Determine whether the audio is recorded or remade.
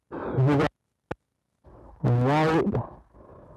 recorded